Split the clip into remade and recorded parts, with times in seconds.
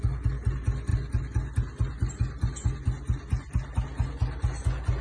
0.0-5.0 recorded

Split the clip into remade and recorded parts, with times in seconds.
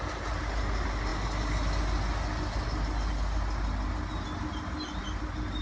0.0-5.6 recorded